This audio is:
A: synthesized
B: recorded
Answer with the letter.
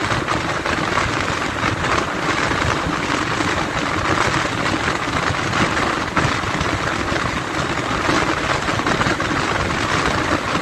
B